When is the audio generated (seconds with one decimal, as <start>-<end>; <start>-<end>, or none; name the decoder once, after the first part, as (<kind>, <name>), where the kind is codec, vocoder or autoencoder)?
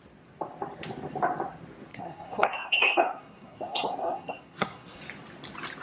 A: 1.9-5.0 (codec, SNAC)